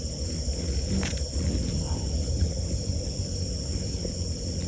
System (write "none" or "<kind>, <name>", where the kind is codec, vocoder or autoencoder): none